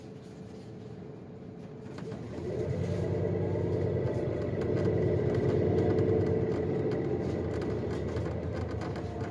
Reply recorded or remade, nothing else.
recorded